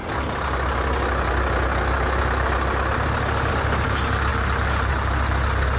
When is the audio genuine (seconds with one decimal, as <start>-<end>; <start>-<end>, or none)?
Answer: 0.0-5.8